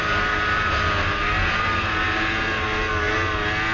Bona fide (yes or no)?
yes